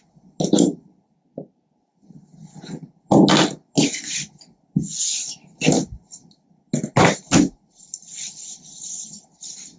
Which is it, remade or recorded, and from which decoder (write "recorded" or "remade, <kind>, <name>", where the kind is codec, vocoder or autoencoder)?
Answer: recorded